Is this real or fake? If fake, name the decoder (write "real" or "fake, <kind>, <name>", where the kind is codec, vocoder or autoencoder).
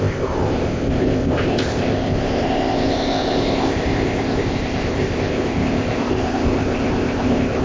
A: fake, codec, ZipCodec